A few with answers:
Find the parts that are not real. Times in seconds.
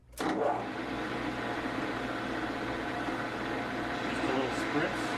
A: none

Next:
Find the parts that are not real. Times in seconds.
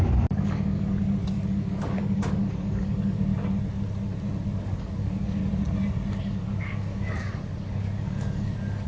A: 0.0-3.3 (codec, DAC); 4.6-5.4; 6.2-8.9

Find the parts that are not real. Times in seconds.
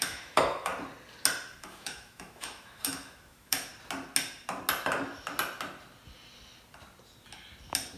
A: 0.0-0.7 (autoencoder, DAC-VAE); 1.6-3.7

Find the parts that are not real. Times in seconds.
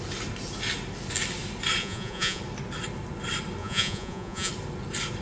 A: 1.8-2.4 (vocoder, Vocos); 3.6-4.5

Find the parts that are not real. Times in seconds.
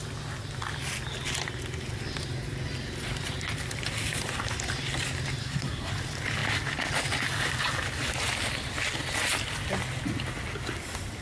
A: 5.4-5.9 (codec, SNAC)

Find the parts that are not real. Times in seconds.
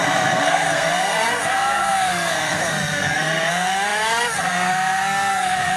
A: 0.0-5.8 (codec, SNAC)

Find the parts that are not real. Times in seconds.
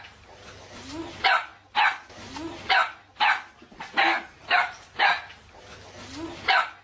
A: none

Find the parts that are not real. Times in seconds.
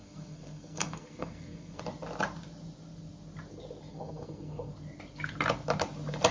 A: 0.0-1.8 (codec, SNAC); 3.9-4.7